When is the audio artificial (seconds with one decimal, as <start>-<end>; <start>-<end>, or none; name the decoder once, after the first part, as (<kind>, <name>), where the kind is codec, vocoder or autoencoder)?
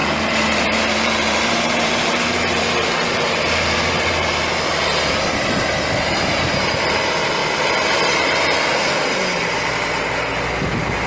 0.0-4.3 (vocoder, BigVGAN v2)